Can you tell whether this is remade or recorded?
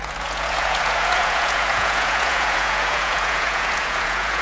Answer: remade